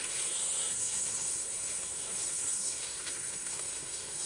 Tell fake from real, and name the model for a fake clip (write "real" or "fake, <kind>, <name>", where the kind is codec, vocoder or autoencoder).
fake, codec, SNAC